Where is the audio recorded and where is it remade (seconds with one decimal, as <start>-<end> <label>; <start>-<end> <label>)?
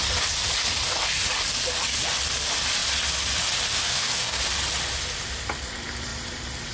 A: 0.0-3.8 recorded; 3.8-4.4 remade; 4.4-6.7 recorded